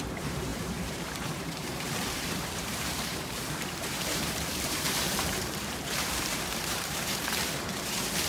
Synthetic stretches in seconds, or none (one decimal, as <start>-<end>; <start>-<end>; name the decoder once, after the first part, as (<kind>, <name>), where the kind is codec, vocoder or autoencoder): 0.0-8.3 (vocoder, BigVGAN v2)